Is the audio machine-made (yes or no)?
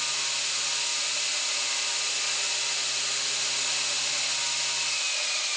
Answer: no